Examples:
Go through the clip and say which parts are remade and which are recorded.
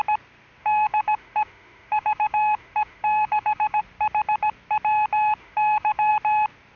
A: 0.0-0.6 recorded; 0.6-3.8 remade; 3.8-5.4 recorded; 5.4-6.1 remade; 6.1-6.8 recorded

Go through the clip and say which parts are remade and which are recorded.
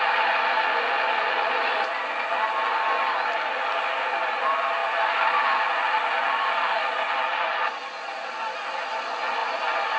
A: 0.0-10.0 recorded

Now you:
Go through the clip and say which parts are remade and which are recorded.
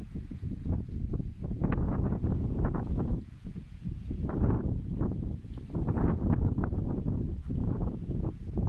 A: 0.0-0.7 remade; 0.7-1.2 recorded; 1.2-5.3 remade; 5.3-7.6 recorded; 7.6-8.7 remade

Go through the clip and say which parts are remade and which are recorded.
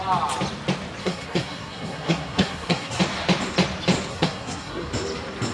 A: 0.0-1.0 recorded; 1.0-3.0 remade; 3.0-4.1 recorded; 4.1-4.9 remade; 4.9-5.5 recorded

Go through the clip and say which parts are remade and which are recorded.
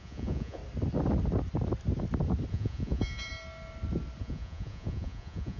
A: 0.0-0.6 remade; 0.6-2.5 recorded; 2.5-3.3 remade; 3.3-4.2 recorded; 4.2-5.6 remade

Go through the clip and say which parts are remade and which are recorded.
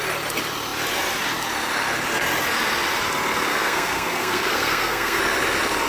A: 0.0-3.5 recorded; 3.5-5.2 remade; 5.2-5.9 recorded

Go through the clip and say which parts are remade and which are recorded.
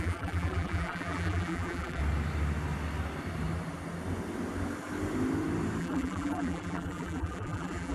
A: 0.0-2.0 remade; 2.0-5.8 recorded; 5.8-7.9 remade